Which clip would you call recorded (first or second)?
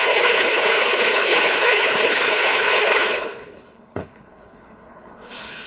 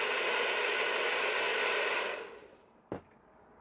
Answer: second